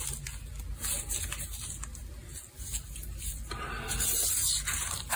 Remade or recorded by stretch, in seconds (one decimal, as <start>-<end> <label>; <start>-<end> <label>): 0.0-1.9 recorded; 1.9-5.2 remade